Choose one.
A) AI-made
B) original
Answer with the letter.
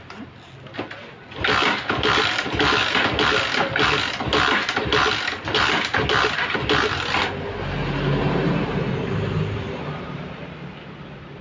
B